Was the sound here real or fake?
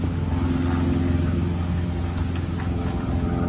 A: real